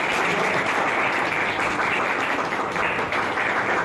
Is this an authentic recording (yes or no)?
yes